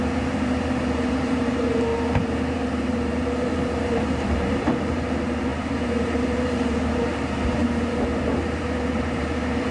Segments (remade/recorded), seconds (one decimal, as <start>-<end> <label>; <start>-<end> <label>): 0.0-9.7 remade